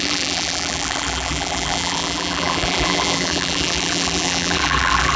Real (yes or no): no